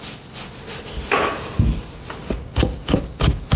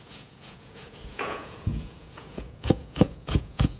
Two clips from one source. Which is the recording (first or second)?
first